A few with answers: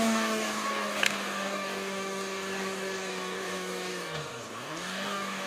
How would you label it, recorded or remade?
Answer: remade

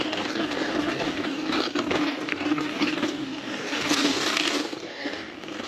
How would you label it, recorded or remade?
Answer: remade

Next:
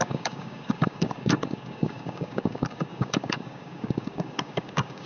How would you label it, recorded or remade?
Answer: remade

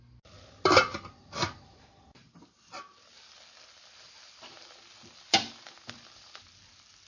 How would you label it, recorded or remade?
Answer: recorded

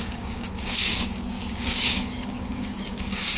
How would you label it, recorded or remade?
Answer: remade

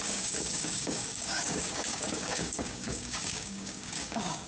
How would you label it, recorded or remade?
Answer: remade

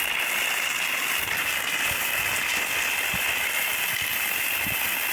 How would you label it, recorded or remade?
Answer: recorded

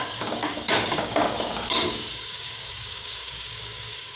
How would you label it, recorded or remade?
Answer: remade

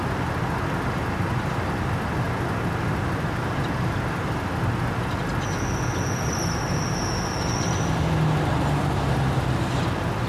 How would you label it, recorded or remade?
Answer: recorded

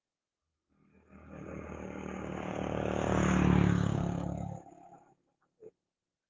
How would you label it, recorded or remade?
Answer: remade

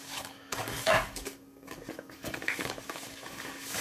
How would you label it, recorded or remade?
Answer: remade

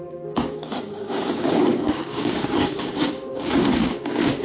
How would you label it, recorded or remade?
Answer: remade